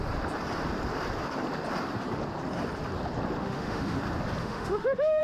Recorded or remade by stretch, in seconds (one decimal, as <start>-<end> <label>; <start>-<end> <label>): 0.0-3.4 recorded; 3.4-4.0 remade; 4.0-4.4 recorded; 4.4-5.2 remade